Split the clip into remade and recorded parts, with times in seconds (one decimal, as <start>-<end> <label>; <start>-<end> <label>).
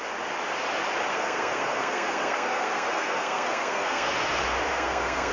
0.0-1.1 recorded; 1.1-4.1 remade; 4.1-4.7 recorded; 4.7-5.3 remade